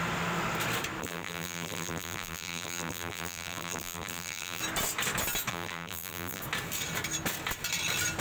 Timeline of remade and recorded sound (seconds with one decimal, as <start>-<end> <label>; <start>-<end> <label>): 0.0-1.0 recorded; 1.0-4.6 remade; 4.6-5.5 recorded; 5.5-6.4 remade; 6.4-8.2 recorded